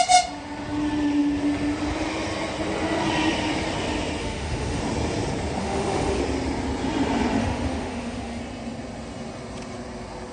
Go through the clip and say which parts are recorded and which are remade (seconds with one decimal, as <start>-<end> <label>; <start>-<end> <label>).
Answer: 0.0-4.2 recorded; 4.2-4.8 remade; 4.8-5.6 recorded; 5.6-6.2 remade; 6.2-7.4 recorded; 7.4-8.4 remade; 8.4-10.3 recorded